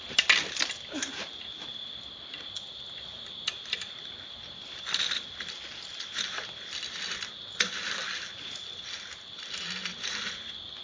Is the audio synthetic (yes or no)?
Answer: no